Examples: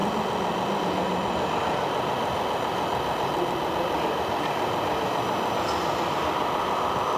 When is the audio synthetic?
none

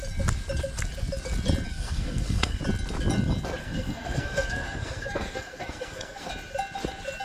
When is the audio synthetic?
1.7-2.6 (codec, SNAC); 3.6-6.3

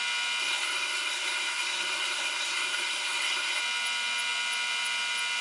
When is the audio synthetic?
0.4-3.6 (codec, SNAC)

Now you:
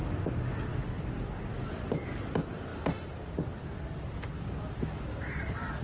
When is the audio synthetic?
none

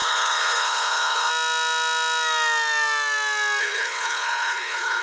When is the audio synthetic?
0.0-1.3 (codec, HILCodec); 3.6-5.0